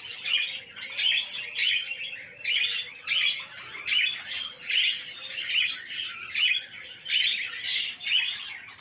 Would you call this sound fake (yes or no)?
no